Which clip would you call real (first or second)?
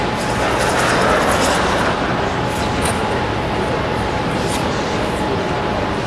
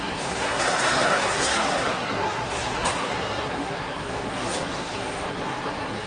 first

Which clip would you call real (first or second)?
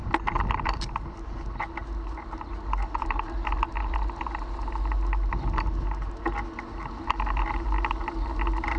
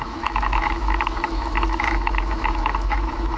first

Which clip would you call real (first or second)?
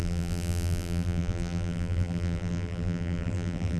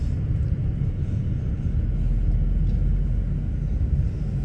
second